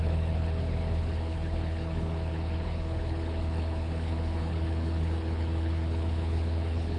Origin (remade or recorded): remade